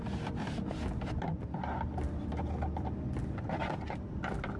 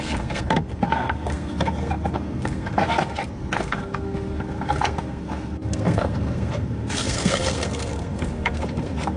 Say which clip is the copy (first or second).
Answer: second